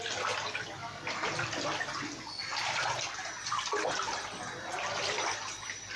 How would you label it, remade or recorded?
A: recorded